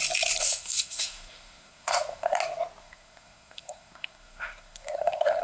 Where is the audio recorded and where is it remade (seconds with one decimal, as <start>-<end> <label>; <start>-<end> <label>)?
0.0-0.4 recorded; 0.4-2.4 remade; 2.4-2.8 recorded; 2.8-5.4 remade